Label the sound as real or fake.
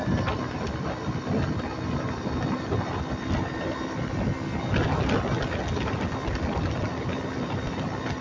real